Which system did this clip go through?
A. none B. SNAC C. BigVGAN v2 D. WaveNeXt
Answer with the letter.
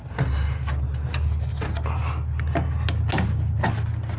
A